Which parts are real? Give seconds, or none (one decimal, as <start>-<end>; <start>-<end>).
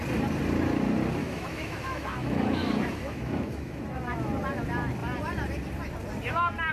0.0-1.2; 3.8-6.7